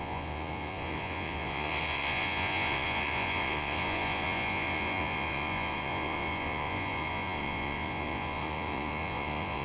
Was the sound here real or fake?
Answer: fake